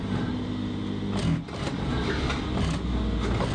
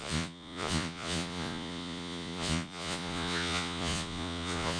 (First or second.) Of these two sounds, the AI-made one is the second